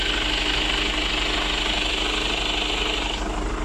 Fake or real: real